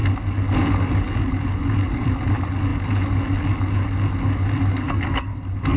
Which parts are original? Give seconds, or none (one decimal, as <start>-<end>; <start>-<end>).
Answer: 0.0-5.8

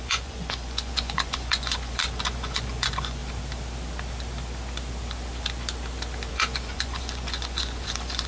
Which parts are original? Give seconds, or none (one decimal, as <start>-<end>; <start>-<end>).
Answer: 3.2-6.3

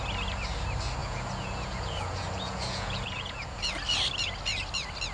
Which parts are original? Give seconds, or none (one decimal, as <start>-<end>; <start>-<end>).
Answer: 0.0-1.0; 3.7-5.1

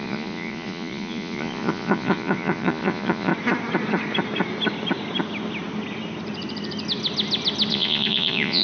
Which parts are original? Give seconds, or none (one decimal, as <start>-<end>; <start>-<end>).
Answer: 3.3-7.7

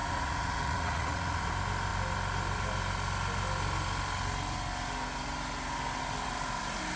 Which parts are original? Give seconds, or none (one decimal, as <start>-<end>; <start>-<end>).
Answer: 1.5-7.0